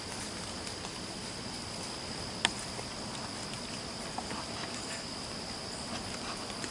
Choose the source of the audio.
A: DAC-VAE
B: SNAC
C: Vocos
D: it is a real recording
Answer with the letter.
D